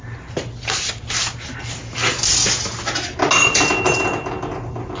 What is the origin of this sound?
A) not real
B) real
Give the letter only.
B